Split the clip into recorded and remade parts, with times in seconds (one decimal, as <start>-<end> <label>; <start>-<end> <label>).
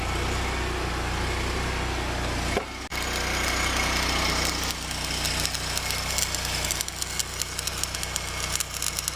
0.0-9.2 recorded